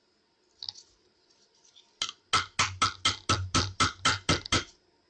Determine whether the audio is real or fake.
real